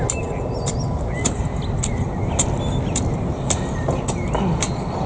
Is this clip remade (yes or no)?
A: no